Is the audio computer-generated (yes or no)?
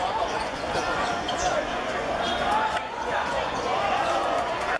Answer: yes